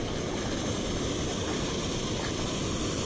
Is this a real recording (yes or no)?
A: yes